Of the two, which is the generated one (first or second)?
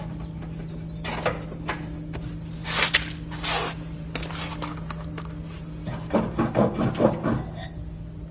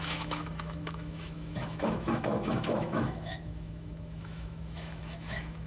second